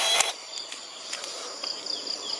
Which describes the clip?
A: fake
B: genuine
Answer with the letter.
A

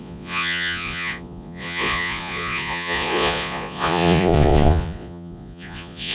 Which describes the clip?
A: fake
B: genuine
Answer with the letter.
A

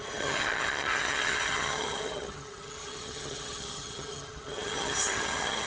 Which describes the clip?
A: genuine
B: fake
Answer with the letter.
B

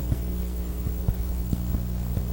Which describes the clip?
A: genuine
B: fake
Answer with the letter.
B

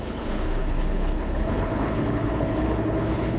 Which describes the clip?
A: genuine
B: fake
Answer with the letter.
B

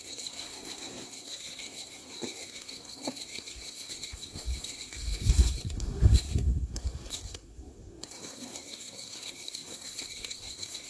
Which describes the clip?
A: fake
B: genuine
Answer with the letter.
A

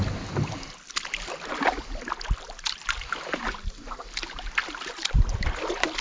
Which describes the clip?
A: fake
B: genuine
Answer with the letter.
B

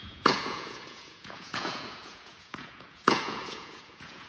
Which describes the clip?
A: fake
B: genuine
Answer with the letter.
A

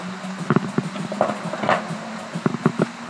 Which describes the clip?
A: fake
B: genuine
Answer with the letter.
B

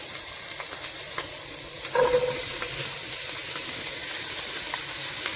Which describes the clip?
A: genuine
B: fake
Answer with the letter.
A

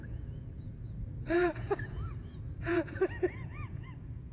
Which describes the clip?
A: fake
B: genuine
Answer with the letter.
A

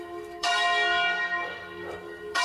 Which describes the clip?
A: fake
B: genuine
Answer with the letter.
A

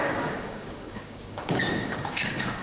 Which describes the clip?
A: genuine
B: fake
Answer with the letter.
B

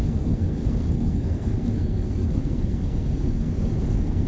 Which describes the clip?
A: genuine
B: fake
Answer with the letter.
B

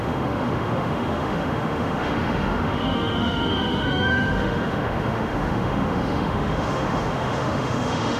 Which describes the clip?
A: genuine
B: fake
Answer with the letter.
B